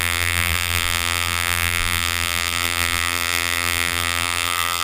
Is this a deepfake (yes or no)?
yes